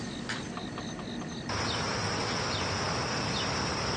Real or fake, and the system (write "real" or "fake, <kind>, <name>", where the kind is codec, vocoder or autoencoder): real